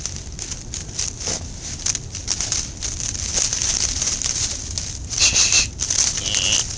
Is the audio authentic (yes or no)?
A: yes